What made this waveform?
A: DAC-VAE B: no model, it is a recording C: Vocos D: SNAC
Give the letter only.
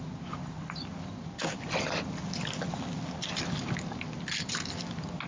B